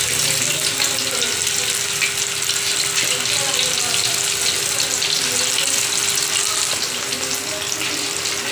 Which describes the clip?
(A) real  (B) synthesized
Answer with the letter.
A